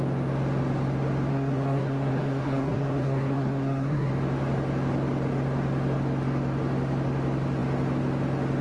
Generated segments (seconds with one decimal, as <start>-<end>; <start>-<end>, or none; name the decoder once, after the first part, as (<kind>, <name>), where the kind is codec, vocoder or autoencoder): 1.3-4.1 (codec, SNAC)